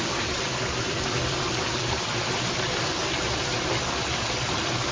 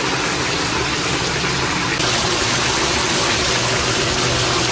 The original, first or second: second